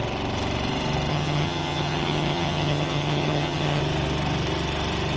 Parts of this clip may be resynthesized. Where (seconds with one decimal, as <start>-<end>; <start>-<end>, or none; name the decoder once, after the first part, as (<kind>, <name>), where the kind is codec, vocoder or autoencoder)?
1.1-3.8 (vocoder, HiFi-GAN)